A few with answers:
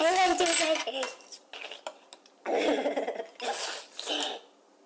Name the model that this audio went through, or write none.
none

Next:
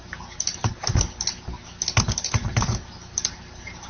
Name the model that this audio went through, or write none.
none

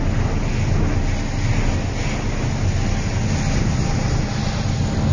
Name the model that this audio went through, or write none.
none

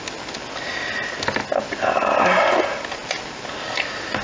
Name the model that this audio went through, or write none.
none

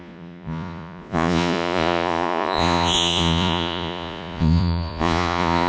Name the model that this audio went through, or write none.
vocoder, Vocos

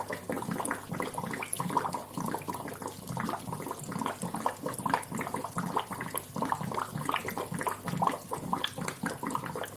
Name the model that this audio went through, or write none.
none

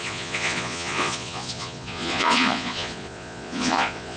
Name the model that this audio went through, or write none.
vocoder, Vocos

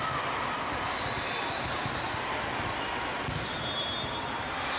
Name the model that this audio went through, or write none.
vocoder, BigVGAN v2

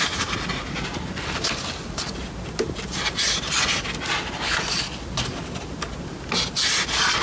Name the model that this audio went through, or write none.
none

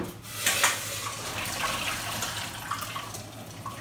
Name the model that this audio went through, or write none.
none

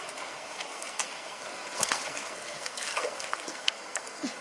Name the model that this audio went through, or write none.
codec, SNAC